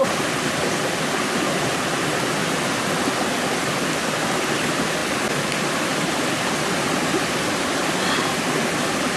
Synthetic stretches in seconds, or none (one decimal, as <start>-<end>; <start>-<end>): none